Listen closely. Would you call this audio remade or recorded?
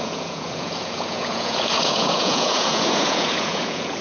remade